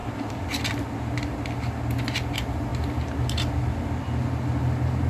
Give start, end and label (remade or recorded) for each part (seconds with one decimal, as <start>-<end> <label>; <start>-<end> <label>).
0.0-5.1 recorded